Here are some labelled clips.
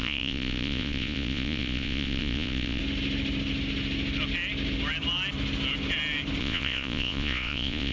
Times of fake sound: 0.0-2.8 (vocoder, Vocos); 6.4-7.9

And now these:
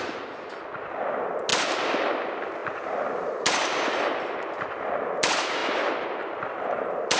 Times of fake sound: none

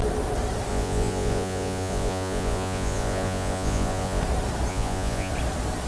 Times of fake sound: 0.7-4.2 (vocoder, Vocos); 4.7-5.3

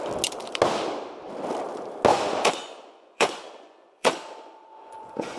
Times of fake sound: 2.1-5.4 (vocoder, Vocos)

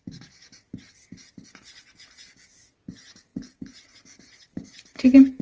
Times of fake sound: 3.3-4.0 (vocoder, Vocos)